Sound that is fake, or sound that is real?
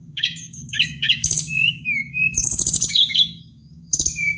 fake